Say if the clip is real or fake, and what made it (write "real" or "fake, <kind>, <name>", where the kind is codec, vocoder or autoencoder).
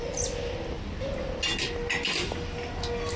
real